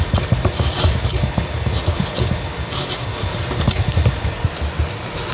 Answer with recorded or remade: recorded